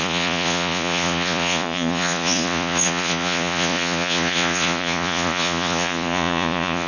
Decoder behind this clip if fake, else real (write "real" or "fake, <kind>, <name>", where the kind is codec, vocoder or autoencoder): fake, vocoder, Vocos